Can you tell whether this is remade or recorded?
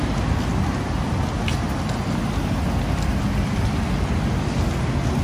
recorded